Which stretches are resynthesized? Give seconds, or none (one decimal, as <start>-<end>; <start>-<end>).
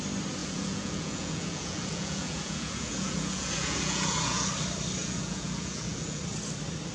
0.4-4.5; 5.0-6.2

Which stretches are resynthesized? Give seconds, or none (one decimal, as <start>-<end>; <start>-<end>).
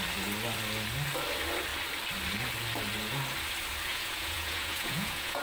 3.9-5.4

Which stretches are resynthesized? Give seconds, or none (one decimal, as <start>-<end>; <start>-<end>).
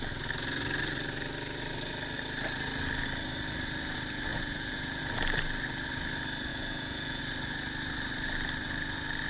4.3-5.0; 6.5-7.2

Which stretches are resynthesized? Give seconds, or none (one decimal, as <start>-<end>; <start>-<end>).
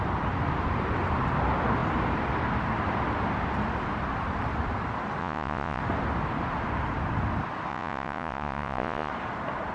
5.2-5.8; 7.7-9.1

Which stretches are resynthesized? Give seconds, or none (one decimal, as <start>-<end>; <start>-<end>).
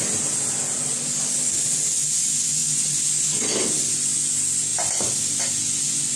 none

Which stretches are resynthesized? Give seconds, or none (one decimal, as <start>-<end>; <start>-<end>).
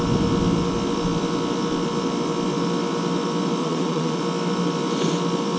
3.6-4.2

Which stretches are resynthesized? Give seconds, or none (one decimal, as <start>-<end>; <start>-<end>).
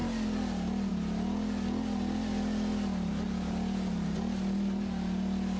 none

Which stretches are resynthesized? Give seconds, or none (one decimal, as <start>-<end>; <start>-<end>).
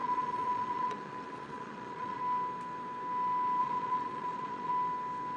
0.0-2.2; 3.6-4.7